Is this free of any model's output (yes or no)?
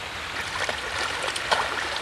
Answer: yes